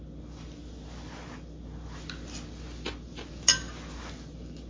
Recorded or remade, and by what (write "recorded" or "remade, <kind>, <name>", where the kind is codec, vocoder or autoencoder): recorded